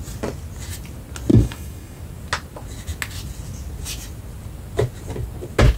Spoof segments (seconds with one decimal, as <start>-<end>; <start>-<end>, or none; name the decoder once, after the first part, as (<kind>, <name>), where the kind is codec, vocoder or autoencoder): 1.3-2.0 (codec, DAC)